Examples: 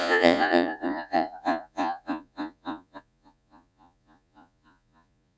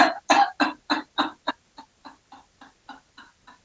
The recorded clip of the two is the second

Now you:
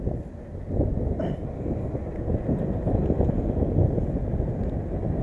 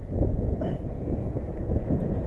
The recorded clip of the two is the first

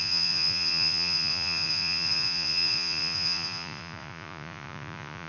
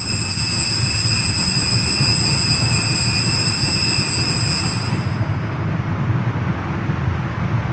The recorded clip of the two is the second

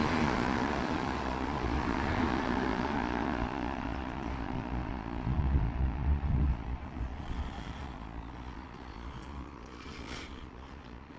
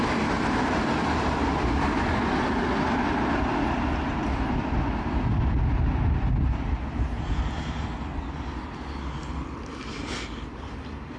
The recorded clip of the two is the second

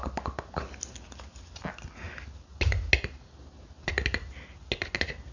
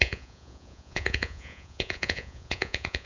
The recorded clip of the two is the first